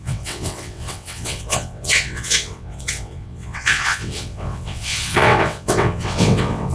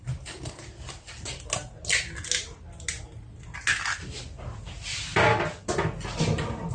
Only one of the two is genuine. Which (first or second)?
second